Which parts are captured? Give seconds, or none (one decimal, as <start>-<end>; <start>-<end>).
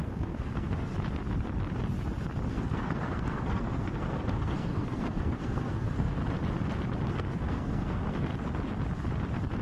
0.9-2.5; 6.2-7.1; 8.3-9.6